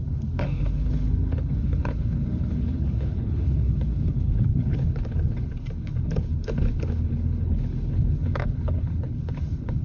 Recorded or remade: remade